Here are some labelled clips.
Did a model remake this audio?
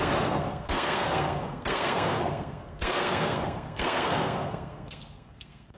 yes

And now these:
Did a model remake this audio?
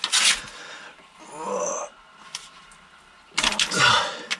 no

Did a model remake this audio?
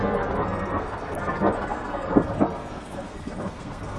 yes